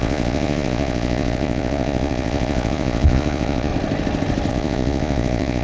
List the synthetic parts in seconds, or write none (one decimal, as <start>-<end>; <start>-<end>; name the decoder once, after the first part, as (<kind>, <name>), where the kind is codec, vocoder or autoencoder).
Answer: 0.0-3.7 (vocoder, Vocos); 4.5-5.6